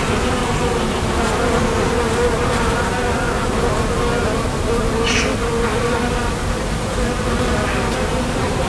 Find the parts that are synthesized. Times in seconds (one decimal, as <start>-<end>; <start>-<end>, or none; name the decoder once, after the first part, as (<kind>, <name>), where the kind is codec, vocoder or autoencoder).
0.0-0.6 (vocoder, BigVGAN v2); 5.8-6.2; 8.1-8.7